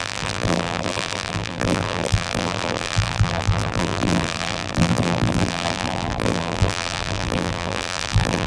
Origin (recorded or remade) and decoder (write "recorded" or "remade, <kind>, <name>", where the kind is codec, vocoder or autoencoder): remade, vocoder, BigVGAN v2